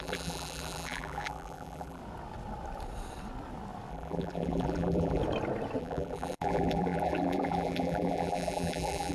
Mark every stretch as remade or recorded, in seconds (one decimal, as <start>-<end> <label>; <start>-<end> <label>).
0.0-2.0 remade; 2.0-3.9 recorded; 3.9-5.2 remade; 5.2-5.8 recorded; 5.8-9.1 remade